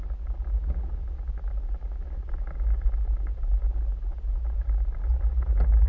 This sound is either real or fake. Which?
real